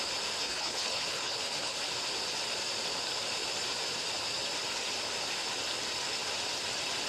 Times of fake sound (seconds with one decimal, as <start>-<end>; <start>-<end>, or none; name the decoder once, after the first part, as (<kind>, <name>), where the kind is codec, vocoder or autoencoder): 0.4-1.8 (codec, HILCodec)